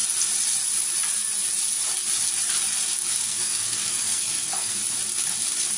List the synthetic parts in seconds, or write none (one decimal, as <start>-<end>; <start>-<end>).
3.2-4.8